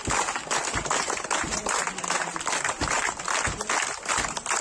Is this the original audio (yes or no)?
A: yes